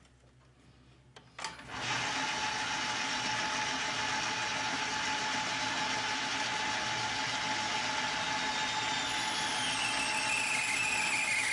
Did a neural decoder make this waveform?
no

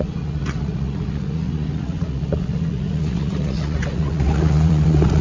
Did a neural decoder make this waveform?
yes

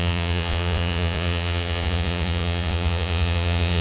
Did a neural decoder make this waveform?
yes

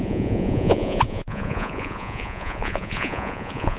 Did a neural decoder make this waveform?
yes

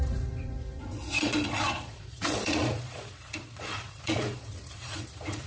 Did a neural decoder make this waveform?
yes